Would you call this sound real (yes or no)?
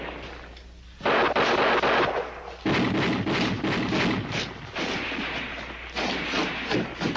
yes